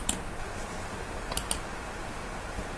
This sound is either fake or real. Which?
real